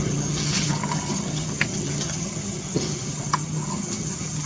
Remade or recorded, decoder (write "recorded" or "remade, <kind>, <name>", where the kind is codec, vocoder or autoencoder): remade, vocoder, HiFi-GAN